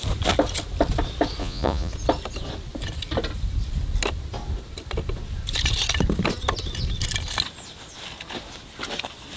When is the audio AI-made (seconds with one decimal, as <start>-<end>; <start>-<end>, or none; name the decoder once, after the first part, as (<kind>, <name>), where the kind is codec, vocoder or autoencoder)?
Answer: 1.4-1.9 (vocoder, Vocos)